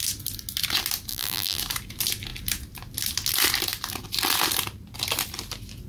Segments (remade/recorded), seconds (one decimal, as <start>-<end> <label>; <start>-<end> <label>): 0.0-1.1 recorded; 1.1-1.6 remade; 1.6-5.9 recorded